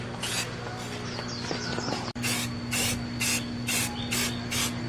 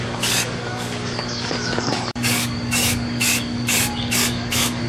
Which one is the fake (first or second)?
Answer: second